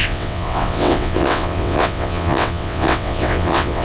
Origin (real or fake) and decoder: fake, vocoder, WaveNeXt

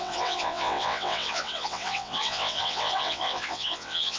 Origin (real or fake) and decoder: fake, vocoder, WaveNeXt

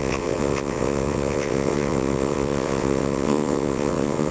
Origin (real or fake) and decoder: fake, vocoder, WaveNeXt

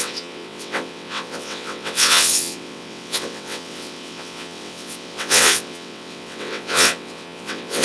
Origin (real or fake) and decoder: fake, vocoder, WaveNeXt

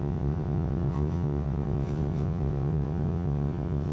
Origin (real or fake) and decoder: fake, vocoder, WaveNeXt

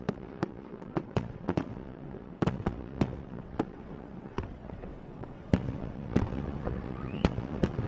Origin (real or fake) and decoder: fake, vocoder, WaveNeXt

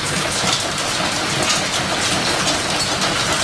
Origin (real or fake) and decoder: real